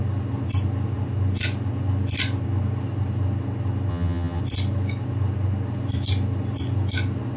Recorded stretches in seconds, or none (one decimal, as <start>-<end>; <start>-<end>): 0.0-3.9; 4.4-7.4